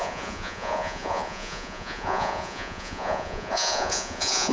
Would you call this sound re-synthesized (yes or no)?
yes